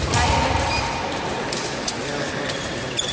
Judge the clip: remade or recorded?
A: recorded